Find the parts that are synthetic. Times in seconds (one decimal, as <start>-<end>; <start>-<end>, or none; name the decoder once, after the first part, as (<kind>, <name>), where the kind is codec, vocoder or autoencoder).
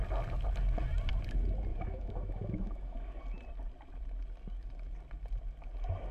1.7-3.2 (autoencoder, DAC-VAE)